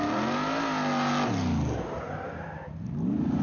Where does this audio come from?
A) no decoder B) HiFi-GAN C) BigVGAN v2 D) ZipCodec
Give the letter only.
A